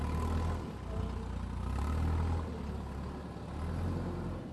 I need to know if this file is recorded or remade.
recorded